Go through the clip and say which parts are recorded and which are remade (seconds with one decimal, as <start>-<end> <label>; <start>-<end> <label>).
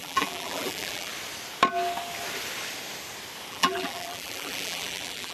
0.0-1.1 remade; 1.1-3.5 recorded; 3.5-5.3 remade